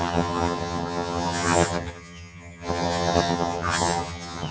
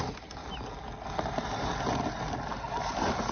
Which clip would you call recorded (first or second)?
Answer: second